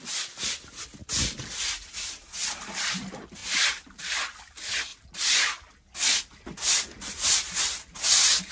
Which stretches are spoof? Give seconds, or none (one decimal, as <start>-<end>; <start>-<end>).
none